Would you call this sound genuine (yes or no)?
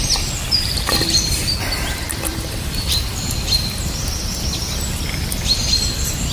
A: no